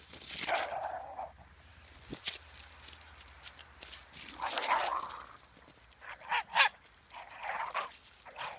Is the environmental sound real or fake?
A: real